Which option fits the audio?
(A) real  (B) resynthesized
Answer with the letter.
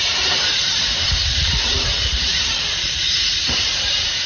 B